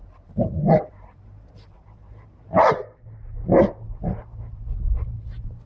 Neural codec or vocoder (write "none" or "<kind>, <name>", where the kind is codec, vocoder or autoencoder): vocoder, BigVGAN v2